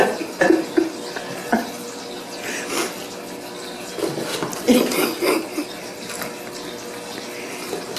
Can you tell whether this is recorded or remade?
recorded